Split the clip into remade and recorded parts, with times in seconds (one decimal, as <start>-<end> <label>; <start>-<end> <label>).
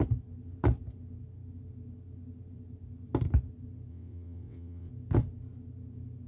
0.0-3.9 recorded; 3.9-4.9 remade; 4.9-6.3 recorded